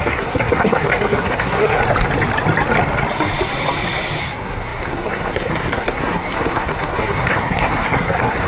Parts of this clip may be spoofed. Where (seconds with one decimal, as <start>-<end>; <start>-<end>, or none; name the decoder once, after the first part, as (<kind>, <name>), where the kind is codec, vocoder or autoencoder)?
0.0-1.8 (codec, SNAC); 4.2-8.5